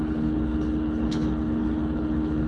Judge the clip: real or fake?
fake